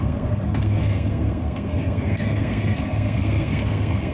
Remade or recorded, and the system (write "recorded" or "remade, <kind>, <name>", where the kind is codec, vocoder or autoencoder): remade, codec, SNAC